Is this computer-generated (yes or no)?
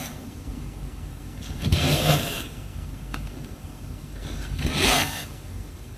yes